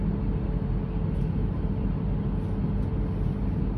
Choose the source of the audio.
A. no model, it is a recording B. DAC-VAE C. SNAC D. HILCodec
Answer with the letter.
A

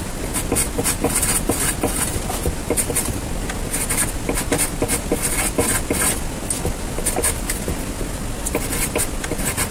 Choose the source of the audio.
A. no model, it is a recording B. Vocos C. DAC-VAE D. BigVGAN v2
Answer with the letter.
A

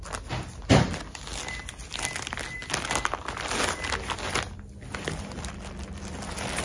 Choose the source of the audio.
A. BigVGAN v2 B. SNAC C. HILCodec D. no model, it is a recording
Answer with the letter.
D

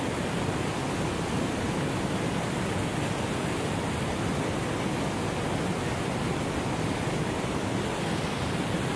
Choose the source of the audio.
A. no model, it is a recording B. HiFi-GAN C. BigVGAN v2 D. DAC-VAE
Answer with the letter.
A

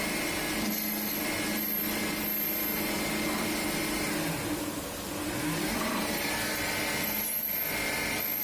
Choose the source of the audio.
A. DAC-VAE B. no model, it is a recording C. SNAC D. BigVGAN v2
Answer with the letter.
B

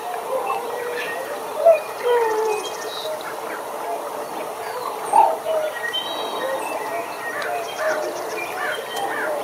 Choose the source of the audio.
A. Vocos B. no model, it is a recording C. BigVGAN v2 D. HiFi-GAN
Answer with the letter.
C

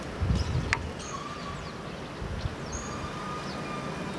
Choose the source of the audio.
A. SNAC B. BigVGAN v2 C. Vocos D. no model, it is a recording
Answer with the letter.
D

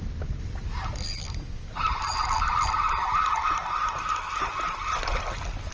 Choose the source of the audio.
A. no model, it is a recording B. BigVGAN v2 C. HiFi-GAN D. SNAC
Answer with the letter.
A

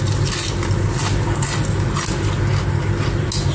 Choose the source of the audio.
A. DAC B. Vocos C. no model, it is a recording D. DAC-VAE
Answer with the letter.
C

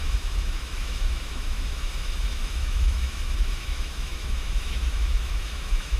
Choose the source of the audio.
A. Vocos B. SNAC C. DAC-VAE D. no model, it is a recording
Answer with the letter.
C